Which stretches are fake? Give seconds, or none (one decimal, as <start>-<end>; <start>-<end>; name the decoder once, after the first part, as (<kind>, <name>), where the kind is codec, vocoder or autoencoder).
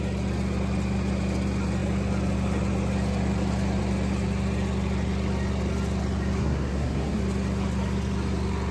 6.4-7.2 (codec, SNAC)